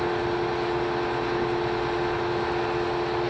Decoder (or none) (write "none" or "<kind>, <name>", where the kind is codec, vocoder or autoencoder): none